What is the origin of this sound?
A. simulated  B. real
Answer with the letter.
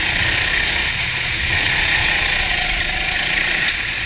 A